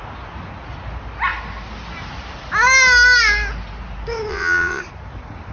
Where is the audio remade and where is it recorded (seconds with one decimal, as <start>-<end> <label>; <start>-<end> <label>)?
0.0-4.3 recorded; 4.3-4.8 remade; 4.8-5.5 recorded